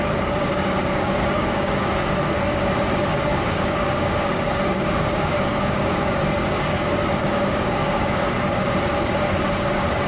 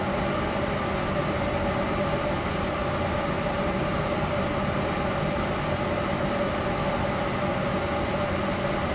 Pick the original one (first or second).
second